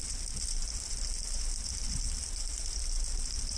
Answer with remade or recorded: recorded